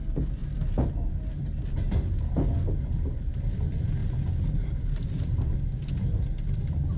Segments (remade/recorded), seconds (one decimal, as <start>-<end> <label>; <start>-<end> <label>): 0.0-7.0 recorded